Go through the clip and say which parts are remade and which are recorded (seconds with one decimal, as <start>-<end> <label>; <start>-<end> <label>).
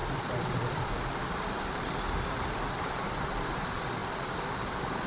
0.0-1.6 remade; 1.6-4.0 recorded; 4.0-5.1 remade